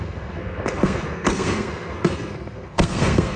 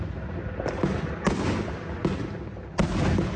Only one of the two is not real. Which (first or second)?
first